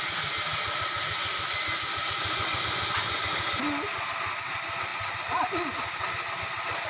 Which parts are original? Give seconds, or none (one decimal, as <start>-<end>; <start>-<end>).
0.0-6.9